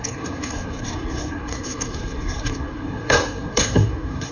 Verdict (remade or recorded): remade